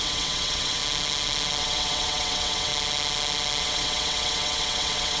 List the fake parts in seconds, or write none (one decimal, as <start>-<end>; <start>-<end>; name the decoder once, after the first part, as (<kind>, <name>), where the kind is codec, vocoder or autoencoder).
0.0-0.8 (vocoder, WaveNeXt); 1.6-2.7; 3.6-5.2